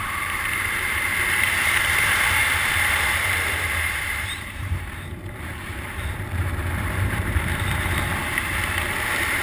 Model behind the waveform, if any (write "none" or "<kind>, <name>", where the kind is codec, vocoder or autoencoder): vocoder, BigVGAN v2